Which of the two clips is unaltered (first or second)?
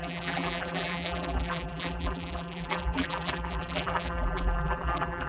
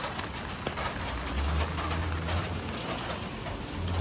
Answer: second